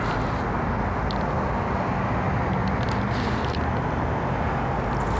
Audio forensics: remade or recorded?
recorded